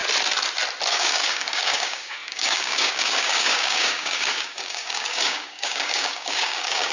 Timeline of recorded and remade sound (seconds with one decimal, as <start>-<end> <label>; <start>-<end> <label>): 0.0-0.9 recorded; 0.9-6.9 remade